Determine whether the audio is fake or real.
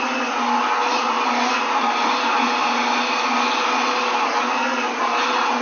real